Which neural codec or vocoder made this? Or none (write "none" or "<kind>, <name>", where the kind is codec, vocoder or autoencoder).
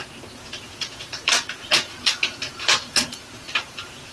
vocoder, Vocos